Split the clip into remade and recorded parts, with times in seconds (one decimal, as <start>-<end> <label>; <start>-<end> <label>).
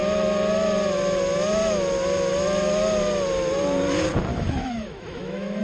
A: 0.0-4.3 recorded; 4.3-5.6 remade